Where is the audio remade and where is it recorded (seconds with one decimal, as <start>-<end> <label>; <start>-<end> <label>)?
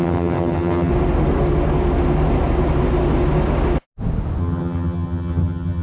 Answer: 0.0-0.9 remade; 0.9-4.4 recorded; 4.4-5.8 remade